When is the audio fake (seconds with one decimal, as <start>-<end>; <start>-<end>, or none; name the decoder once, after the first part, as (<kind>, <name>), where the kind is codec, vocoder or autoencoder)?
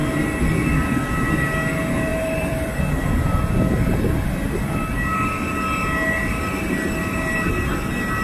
2.1-2.8 (vocoder, BigVGAN v2)